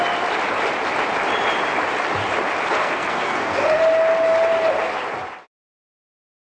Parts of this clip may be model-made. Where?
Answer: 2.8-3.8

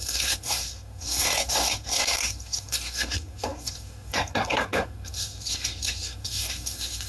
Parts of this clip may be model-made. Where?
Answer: 0.0-7.1

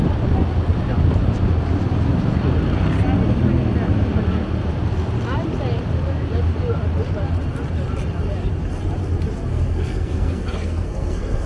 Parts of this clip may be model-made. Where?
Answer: 9.5-11.5

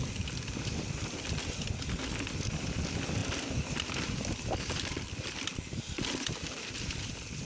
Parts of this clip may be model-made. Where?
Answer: none

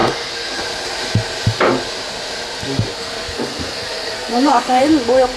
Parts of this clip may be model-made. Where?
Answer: 0.0-0.6; 2.9-4.8

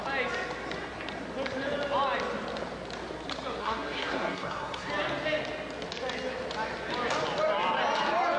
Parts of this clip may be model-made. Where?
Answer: 3.6-4.9